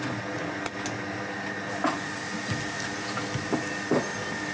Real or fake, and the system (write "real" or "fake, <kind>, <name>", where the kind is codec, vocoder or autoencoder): real